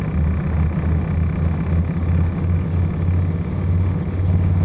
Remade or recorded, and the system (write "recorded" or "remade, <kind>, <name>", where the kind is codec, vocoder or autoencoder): recorded